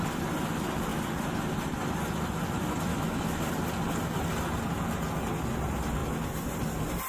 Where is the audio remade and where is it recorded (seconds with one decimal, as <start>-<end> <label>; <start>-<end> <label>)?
0.0-2.9 recorded; 2.9-3.5 remade; 3.5-7.1 recorded